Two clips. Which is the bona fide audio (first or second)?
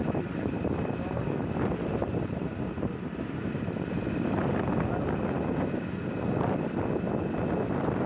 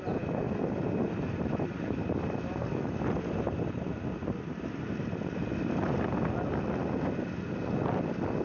second